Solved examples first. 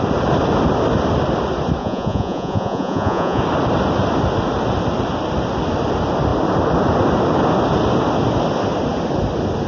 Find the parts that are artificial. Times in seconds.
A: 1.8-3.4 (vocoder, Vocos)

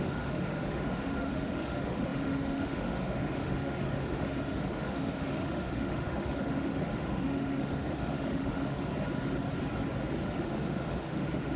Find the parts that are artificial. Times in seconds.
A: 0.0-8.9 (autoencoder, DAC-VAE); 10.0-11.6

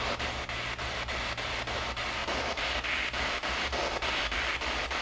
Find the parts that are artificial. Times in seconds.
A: 2.2-2.7 (vocoder, BigVGAN v2)